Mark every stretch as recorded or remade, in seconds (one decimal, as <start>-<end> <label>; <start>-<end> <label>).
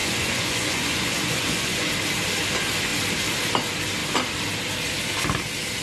0.0-1.9 remade; 1.9-5.8 recorded